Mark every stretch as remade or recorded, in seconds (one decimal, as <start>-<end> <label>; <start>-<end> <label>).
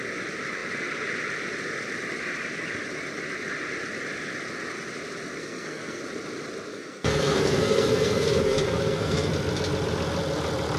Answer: 0.0-5.4 recorded; 5.4-6.0 remade; 6.0-6.7 recorded; 6.7-9.3 remade; 9.3-10.8 recorded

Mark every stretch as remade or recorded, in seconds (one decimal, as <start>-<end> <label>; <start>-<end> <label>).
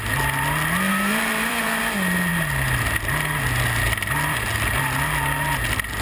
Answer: 0.0-0.9 recorded; 0.9-1.8 remade; 1.8-6.0 recorded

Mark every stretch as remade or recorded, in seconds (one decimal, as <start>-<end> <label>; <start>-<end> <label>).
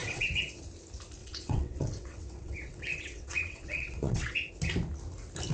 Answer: 0.0-0.6 remade; 0.6-1.2 recorded; 1.2-4.5 remade; 4.5-5.5 recorded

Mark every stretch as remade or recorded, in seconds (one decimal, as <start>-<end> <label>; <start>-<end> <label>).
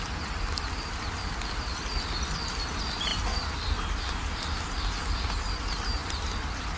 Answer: 0.0-6.8 recorded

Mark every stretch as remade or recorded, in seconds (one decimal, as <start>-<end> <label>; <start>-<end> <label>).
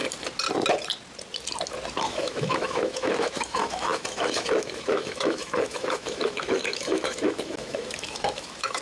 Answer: 0.0-2.0 recorded; 2.0-8.8 remade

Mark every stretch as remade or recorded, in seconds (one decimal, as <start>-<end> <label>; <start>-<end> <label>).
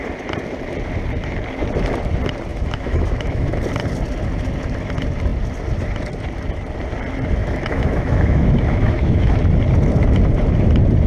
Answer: 0.0-2.5 recorded; 2.5-3.6 remade; 3.6-7.4 recorded; 7.4-9.4 remade; 9.4-11.1 recorded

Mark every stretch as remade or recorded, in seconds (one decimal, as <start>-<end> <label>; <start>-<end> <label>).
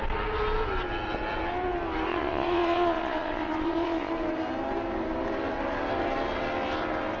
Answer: 0.0-2.1 recorded; 2.1-4.1 remade; 4.1-7.2 recorded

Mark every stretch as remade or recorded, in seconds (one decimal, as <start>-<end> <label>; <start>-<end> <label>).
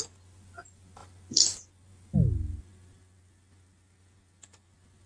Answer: 0.0-5.1 recorded